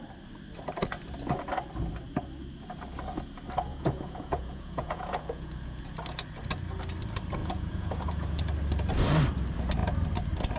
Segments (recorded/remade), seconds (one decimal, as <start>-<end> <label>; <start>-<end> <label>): 0.0-3.7 recorded; 3.7-5.8 remade; 5.8-7.4 recorded; 7.4-8.4 remade; 8.4-10.6 recorded